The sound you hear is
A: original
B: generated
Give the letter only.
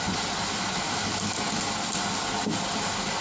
A